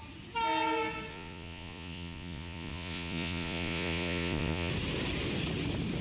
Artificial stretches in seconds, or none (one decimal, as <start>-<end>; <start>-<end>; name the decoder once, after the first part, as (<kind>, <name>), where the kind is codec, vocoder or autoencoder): 1.1-4.7 (vocoder, Vocos)